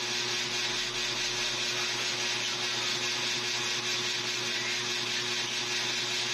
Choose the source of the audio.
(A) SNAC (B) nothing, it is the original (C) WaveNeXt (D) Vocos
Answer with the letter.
B